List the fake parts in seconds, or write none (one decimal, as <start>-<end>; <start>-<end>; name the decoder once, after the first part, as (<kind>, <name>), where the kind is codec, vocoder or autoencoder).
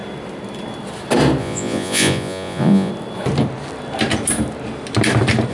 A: 1.4-2.9 (vocoder, Vocos)